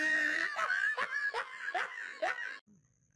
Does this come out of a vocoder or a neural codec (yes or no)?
yes